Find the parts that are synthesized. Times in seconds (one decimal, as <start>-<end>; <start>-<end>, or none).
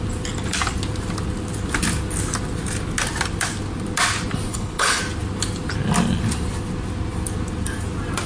4.5-5.0